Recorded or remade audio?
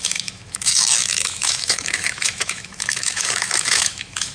remade